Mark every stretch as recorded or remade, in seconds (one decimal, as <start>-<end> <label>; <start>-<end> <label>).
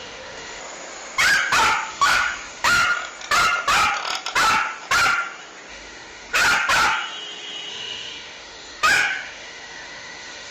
0.0-0.6 remade; 0.6-1.9 recorded; 1.9-2.8 remade; 2.8-5.7 recorded; 5.7-6.4 remade; 6.4-7.7 recorded; 7.7-10.5 remade